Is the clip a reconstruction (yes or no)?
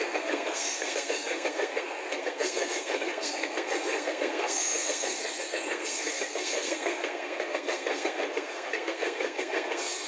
yes